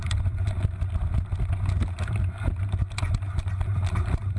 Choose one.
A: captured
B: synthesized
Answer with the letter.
A